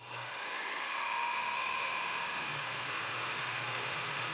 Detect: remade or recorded remade